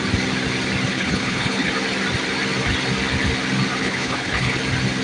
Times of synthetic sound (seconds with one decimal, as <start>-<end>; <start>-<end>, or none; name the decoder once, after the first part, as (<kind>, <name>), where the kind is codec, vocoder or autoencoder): 0.9-1.7 (codec, HILCodec); 3.8-4.6